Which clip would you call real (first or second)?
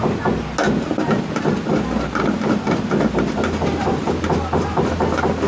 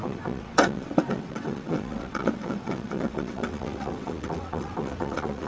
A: first